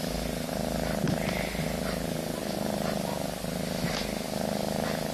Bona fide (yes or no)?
yes